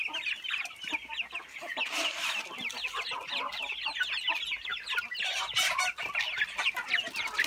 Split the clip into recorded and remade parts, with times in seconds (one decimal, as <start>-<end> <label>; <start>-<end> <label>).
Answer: 0.0-7.5 recorded